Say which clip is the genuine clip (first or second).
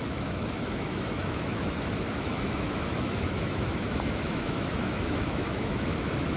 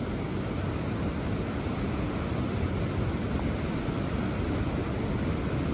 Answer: second